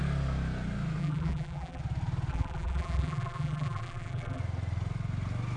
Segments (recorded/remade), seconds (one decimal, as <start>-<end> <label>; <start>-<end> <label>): 0.0-1.0 recorded; 1.0-1.8 remade; 1.8-2.3 recorded; 2.3-4.4 remade; 4.4-5.6 recorded